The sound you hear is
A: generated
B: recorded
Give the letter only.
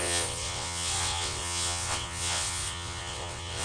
A